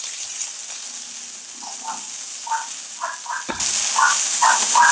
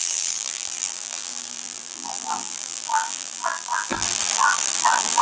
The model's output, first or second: second